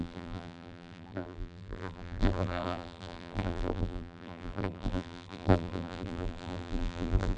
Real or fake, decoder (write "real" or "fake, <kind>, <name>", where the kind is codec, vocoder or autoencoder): fake, vocoder, BigVGAN v2